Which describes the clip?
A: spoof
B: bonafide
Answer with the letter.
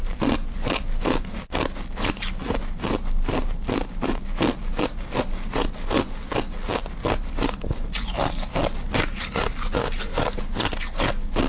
B